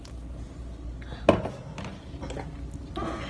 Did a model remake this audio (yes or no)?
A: no